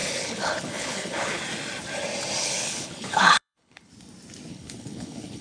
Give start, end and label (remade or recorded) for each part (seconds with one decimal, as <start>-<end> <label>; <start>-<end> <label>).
0.0-1.4 remade; 1.4-2.4 recorded; 2.4-3.9 remade; 3.9-4.5 recorded; 4.5-5.4 remade